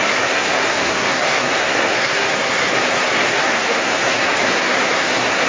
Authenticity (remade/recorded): remade